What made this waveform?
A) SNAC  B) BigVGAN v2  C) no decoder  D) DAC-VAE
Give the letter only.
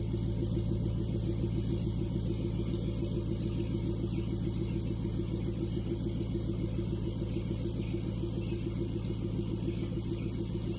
C